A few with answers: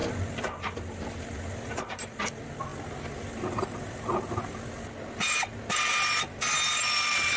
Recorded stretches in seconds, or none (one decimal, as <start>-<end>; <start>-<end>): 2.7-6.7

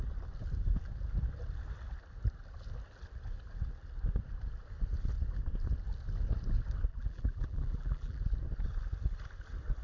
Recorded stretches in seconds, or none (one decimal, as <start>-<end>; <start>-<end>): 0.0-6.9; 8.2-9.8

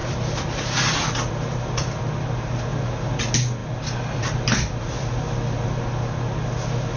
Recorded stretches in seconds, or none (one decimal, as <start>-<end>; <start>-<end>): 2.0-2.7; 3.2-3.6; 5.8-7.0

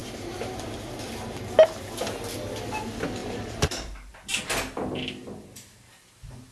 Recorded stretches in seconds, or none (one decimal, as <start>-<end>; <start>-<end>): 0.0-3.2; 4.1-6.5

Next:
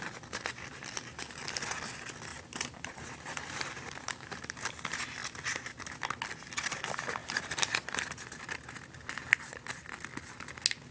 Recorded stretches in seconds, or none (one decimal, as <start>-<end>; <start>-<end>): 0.0-2.3; 4.7-7.2; 7.7-10.9

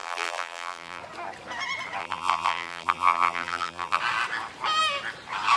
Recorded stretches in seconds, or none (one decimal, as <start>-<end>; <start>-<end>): 1.0-2.0; 4.0-5.6

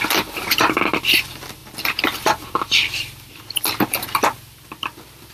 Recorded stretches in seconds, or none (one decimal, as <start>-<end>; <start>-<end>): none

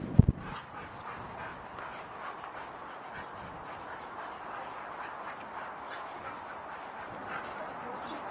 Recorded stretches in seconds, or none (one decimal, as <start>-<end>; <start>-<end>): 1.5-6.5